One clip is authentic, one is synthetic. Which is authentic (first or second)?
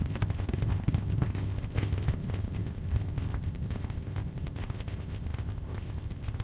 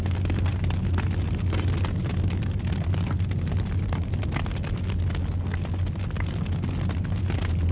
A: second